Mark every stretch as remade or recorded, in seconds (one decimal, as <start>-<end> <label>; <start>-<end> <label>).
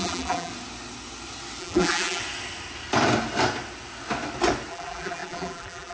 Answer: 0.0-0.5 remade; 0.5-1.6 recorded; 1.6-2.2 remade; 2.2-4.7 recorded; 4.7-5.9 remade